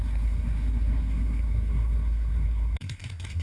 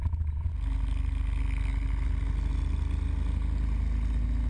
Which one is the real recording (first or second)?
second